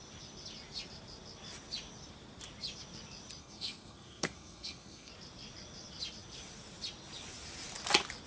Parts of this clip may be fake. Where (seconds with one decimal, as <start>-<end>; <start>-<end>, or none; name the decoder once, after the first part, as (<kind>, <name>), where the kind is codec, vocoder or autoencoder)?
3.4-5.1 (codec, SNAC)